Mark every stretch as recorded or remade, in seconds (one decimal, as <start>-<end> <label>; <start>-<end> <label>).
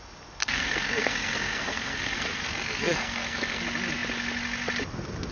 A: 0.0-0.4 recorded; 0.4-3.6 remade; 3.6-5.3 recorded